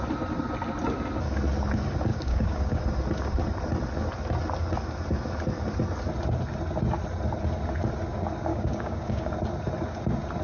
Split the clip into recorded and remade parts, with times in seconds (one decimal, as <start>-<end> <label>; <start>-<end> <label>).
0.0-2.1 recorded; 2.1-2.8 remade; 2.8-8.5 recorded; 8.5-9.3 remade; 9.3-10.4 recorded